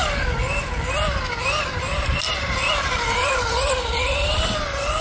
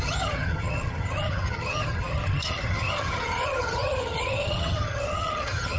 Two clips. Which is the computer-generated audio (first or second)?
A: second